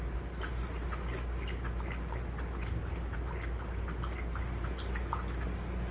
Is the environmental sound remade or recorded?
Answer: recorded